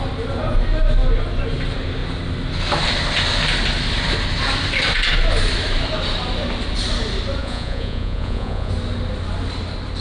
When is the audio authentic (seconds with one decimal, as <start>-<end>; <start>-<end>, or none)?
0.0-7.4; 8.7-10.0

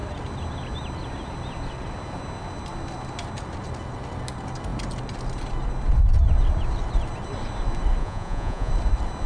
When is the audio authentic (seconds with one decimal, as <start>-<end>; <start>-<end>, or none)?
0.0-8.0; 8.7-9.3

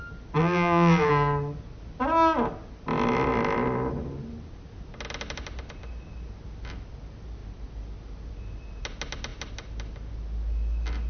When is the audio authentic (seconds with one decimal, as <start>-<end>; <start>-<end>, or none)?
0.0-0.4; 1.1-11.1

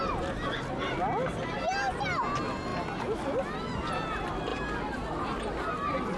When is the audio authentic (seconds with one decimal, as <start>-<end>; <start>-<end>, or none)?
0.0-6.2